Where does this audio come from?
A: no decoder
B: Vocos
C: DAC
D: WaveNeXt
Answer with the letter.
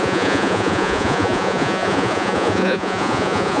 B